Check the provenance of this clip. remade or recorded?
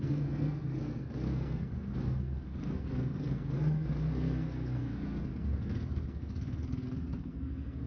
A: remade